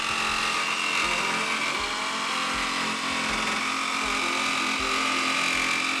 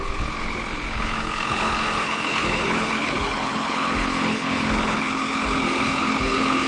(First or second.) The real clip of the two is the first